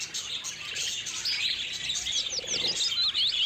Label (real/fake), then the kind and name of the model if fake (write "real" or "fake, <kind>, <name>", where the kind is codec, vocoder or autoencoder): real